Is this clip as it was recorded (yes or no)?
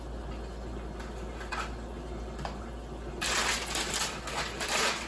yes